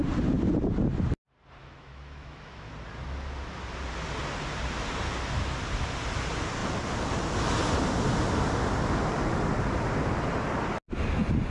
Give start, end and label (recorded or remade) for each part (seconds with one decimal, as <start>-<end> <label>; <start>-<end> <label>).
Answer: 0.0-1.6 recorded; 1.6-2.7 remade; 2.7-11.5 recorded